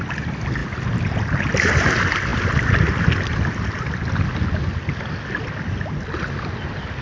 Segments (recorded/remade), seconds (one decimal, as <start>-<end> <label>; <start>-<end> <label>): 0.0-7.0 recorded

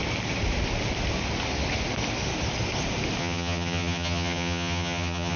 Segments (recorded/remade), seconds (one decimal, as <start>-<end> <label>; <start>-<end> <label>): 0.0-3.2 recorded; 3.2-5.4 remade

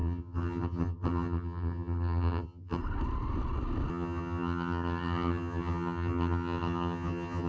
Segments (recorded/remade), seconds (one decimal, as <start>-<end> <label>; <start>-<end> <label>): 0.0-2.8 remade; 2.8-3.9 recorded; 3.9-7.5 remade